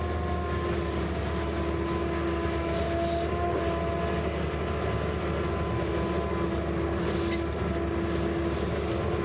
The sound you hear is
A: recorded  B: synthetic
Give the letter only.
A